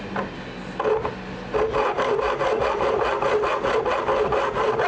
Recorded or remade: recorded